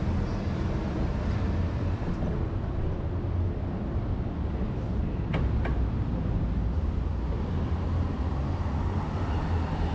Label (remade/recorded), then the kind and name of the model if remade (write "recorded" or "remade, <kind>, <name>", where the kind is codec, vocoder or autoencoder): recorded